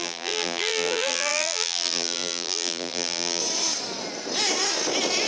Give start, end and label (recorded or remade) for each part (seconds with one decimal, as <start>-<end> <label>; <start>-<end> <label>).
0.0-3.4 remade; 3.4-5.3 recorded